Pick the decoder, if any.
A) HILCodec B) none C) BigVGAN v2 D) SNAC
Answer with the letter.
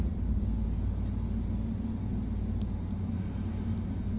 B